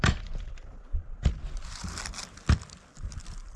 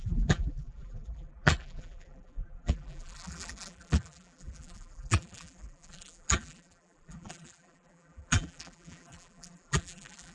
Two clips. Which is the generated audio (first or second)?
second